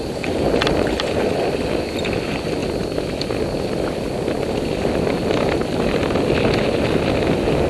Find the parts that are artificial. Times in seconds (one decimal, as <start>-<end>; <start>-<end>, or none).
none